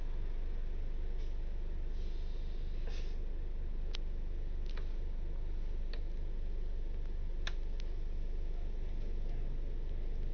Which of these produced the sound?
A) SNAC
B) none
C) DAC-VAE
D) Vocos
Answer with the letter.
B